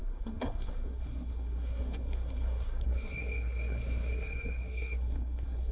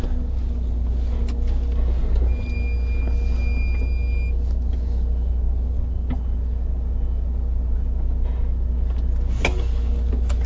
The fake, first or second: first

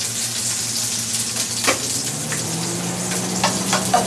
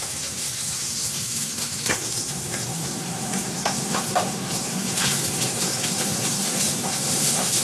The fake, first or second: second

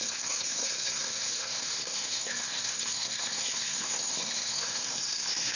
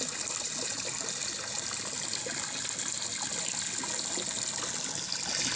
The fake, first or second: first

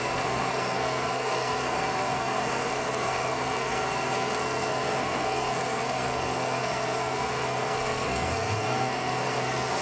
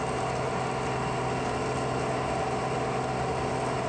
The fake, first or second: first